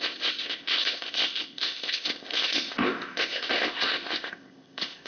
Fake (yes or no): yes